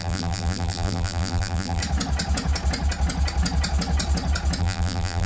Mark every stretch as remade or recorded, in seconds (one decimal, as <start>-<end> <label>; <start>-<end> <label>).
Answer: 0.0-1.8 remade; 1.8-4.6 recorded; 4.6-5.3 remade